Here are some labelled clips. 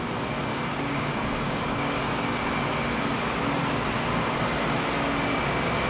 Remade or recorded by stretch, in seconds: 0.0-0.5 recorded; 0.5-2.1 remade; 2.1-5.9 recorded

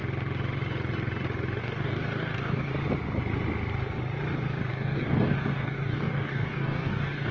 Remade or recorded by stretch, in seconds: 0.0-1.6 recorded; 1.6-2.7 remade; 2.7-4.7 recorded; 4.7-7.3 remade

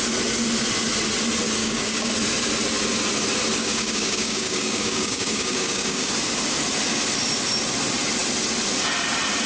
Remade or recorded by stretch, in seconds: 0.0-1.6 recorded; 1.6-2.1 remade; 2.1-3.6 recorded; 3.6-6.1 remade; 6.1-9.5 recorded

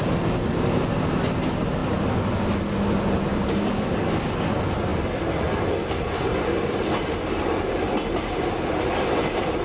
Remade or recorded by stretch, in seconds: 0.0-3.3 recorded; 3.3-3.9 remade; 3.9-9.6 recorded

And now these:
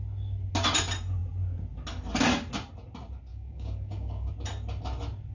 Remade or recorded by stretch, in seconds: 0.0-3.3 recorded; 3.3-4.3 remade; 4.3-5.3 recorded

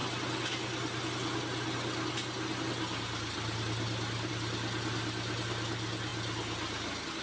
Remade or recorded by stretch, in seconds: 0.0-7.2 recorded

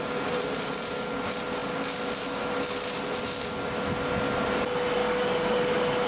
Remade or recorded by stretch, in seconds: 0.0-5.0 recorded; 5.0-6.1 remade

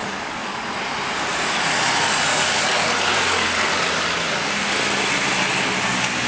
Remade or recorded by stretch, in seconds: 0.0-0.6 remade; 0.6-2.3 recorded; 2.3-4.5 remade; 4.5-6.3 recorded